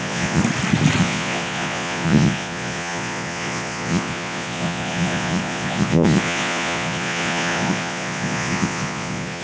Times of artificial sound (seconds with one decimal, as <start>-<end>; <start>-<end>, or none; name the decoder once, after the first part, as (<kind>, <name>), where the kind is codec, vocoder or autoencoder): 0.0-0.4 (vocoder, Vocos); 1.0-9.4